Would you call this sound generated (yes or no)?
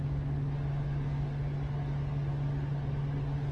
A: no